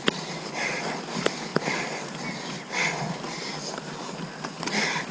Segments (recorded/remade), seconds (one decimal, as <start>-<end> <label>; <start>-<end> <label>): 0.0-5.1 recorded

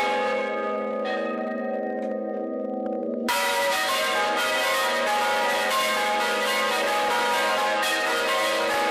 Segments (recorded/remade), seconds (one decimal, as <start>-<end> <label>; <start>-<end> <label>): 0.0-3.0 recorded; 3.0-3.7 remade; 3.7-8.9 recorded

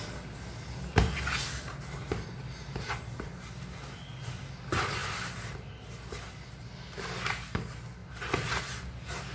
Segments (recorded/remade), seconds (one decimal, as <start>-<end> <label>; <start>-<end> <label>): 0.0-9.3 recorded

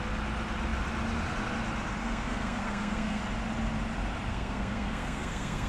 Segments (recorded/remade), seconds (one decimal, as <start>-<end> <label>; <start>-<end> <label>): 0.0-2.0 recorded; 2.0-3.2 remade; 3.2-4.3 recorded; 4.3-5.7 remade

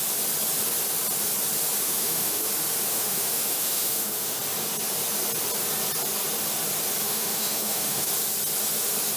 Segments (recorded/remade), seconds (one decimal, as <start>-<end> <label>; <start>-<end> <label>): 0.0-1.8 recorded; 1.8-2.5 remade; 2.5-2.9 recorded; 2.9-4.4 remade; 4.4-7.0 recorded; 7.0-8.1 remade; 8.1-9.2 recorded

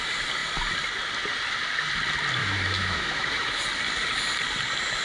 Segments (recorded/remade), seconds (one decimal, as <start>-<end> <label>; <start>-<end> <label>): 0.0-2.4 recorded; 2.4-3.6 remade; 3.6-5.0 recorded